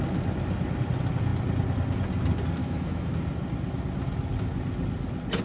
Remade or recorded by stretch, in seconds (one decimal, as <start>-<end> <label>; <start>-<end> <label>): 0.0-2.6 recorded; 2.6-3.1 remade; 3.1-5.4 recorded